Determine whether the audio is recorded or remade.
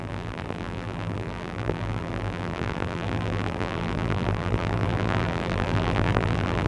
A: remade